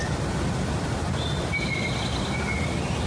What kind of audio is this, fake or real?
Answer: real